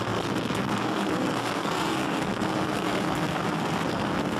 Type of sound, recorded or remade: remade